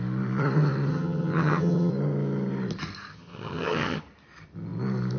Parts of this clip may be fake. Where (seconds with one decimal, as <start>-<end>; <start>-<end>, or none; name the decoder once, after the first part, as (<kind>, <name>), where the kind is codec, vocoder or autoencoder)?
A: 0.9-1.9 (vocoder, HiFi-GAN); 3.1-4.0